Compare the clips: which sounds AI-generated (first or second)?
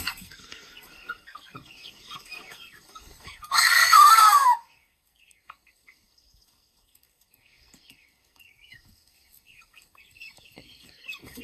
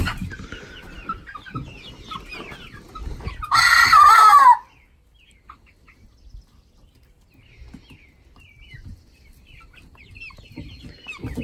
first